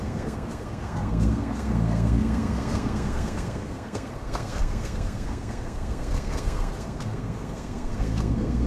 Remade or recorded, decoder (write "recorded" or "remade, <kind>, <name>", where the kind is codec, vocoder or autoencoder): remade, codec, SNAC